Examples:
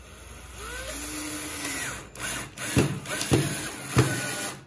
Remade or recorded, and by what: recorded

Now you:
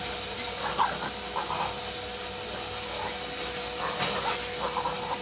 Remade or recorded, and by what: recorded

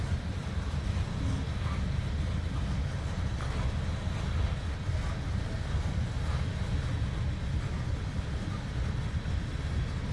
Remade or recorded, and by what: recorded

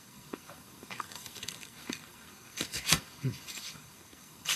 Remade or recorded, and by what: remade, codec, SNAC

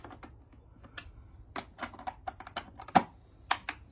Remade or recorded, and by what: recorded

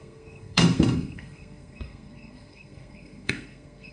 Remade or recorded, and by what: remade, codec, SNAC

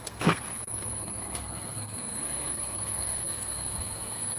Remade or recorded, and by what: remade, codec, SNAC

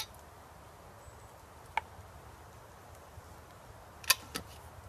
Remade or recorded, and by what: recorded